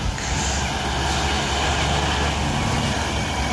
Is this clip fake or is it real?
real